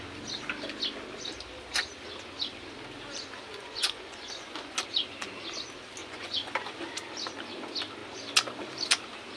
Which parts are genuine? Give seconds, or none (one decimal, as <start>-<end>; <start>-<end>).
0.0-3.5; 4.7-6.0; 6.7-9.4